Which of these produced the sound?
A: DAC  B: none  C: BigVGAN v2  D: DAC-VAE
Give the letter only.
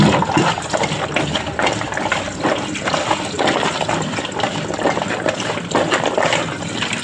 B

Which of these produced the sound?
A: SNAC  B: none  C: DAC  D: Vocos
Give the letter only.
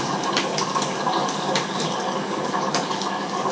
C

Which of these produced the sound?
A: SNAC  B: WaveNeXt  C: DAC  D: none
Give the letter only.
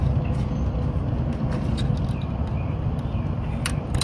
D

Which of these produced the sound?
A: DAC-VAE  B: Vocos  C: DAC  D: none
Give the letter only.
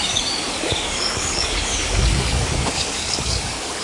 C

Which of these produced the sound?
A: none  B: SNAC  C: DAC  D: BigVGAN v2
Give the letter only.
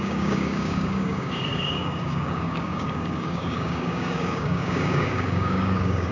C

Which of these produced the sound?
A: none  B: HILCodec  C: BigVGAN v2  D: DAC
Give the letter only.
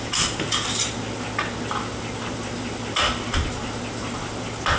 A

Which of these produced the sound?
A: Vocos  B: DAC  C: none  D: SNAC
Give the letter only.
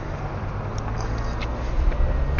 C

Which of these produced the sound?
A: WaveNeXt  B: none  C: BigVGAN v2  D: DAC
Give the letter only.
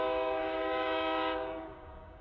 D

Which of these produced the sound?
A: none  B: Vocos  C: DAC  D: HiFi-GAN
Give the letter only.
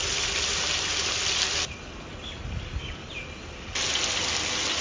A